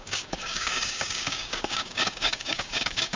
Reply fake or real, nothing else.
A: fake